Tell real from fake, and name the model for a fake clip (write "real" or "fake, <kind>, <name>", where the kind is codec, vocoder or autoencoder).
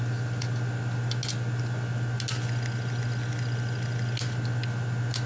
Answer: real